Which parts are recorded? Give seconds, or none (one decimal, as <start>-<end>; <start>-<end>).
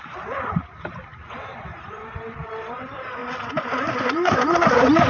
1.1-1.6; 3.2-4.0